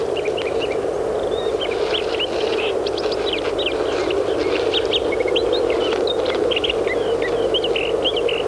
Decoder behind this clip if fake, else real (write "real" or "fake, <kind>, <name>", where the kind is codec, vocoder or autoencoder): real